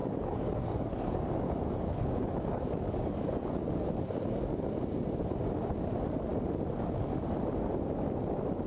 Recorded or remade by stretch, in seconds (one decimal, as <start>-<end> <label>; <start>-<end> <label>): 0.0-4.7 remade; 4.7-8.7 recorded